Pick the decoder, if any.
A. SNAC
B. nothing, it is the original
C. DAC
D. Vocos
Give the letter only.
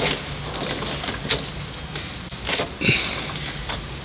B